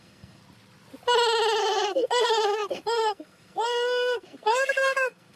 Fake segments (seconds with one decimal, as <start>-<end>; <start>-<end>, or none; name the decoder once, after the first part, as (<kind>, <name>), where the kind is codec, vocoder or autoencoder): 0.0-0.4 (codec, SNAC); 1.6-5.4